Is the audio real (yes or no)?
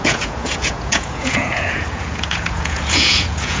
no